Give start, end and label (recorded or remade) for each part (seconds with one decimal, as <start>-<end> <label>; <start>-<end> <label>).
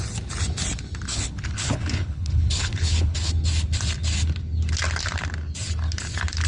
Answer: 0.0-1.1 recorded; 1.1-3.3 remade; 3.3-6.5 recorded